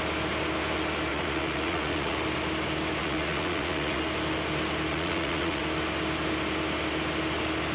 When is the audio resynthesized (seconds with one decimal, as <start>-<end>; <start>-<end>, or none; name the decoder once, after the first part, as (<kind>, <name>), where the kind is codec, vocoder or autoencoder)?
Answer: 1.1-2.2 (vocoder, Vocos); 3.0-4.0; 4.9-5.6